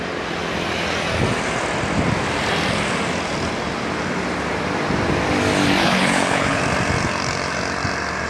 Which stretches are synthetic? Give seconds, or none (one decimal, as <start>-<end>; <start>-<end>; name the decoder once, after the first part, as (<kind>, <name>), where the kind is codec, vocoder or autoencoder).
5.8-6.6 (codec, HILCodec)